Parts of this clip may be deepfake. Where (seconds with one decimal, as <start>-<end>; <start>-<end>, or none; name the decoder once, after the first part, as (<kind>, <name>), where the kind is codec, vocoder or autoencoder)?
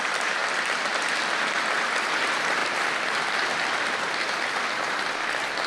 2.6-3.3 (vocoder, BigVGAN v2)